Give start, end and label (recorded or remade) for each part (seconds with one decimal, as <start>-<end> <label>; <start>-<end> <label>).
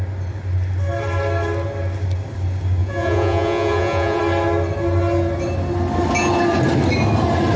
0.0-2.8 recorded; 2.8-4.2 remade; 4.2-7.6 recorded